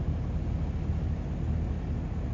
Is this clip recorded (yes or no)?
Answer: yes